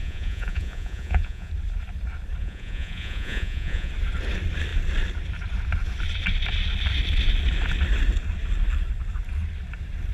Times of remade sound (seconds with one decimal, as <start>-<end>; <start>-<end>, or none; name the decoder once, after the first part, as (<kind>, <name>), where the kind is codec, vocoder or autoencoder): 0.0-1.5 (vocoder, Vocos); 2.4-3.9